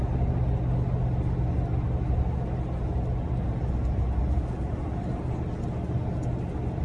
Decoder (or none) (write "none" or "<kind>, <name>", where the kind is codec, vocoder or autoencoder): none